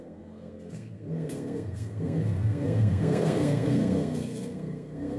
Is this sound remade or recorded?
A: remade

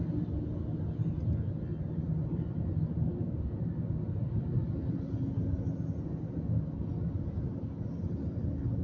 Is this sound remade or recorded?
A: recorded